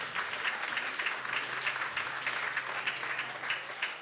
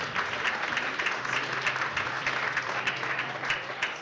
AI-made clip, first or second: second